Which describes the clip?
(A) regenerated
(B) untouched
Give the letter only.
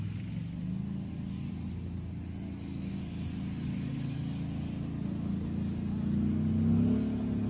B